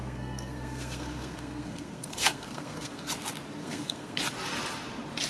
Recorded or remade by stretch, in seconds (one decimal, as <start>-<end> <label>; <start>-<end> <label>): 0.0-3.1 remade; 3.1-3.6 recorded; 3.6-4.2 remade; 4.2-5.3 recorded